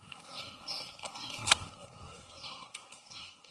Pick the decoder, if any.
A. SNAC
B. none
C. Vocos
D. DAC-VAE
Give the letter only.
A